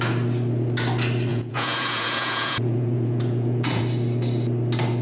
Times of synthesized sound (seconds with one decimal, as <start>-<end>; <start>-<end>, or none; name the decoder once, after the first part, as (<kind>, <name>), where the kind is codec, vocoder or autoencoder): 1.3-3.8 (vocoder, Vocos)